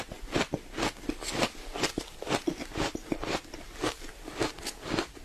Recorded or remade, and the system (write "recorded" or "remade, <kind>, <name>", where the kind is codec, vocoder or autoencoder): recorded